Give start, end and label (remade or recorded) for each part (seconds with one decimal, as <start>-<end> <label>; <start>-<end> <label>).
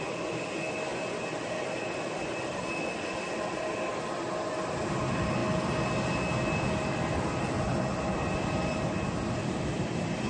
0.0-10.3 recorded